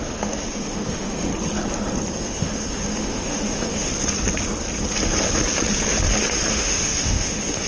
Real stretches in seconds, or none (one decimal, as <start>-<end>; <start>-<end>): 1.3-2.2; 3.9-6.5